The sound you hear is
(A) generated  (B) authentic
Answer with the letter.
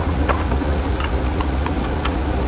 A